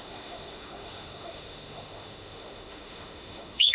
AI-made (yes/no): yes